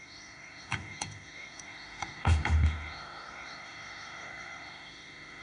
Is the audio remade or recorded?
remade